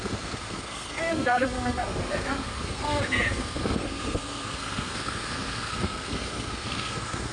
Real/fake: fake